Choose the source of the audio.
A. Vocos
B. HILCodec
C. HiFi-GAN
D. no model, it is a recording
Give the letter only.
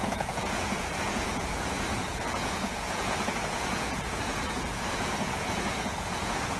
A